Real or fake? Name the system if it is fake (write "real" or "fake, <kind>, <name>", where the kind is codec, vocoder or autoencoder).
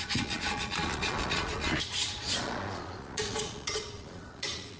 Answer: fake, vocoder, Vocos